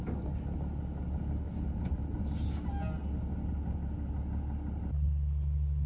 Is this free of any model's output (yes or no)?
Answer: yes